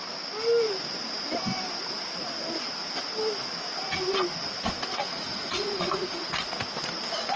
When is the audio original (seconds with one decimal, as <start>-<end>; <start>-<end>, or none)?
0.0-4.9; 6.3-7.4